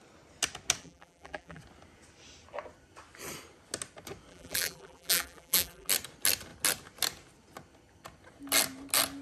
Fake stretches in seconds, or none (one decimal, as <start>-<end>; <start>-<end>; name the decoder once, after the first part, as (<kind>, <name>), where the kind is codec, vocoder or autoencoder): 0.8-1.6 (vocoder, BigVGAN v2); 4.3-5.9